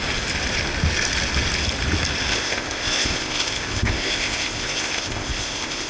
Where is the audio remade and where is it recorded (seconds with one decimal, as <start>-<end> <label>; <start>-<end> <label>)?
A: 0.0-2.3 recorded; 2.3-5.9 remade